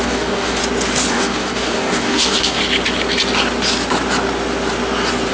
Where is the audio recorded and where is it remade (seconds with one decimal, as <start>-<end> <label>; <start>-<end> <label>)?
0.0-0.6 remade; 0.6-1.1 recorded; 1.1-2.6 remade; 2.6-5.3 recorded